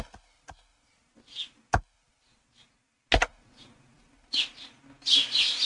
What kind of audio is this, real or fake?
real